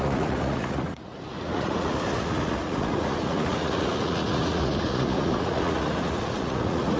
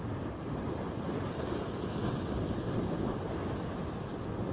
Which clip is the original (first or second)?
second